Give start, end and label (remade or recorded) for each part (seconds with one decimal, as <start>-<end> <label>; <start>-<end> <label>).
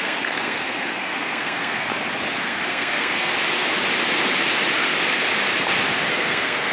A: 0.0-1.9 remade; 1.9-2.4 recorded; 2.4-3.3 remade; 3.3-6.1 recorded; 6.1-6.7 remade